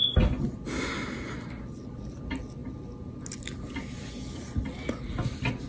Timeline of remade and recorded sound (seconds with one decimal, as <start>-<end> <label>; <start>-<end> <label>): 0.0-5.7 recorded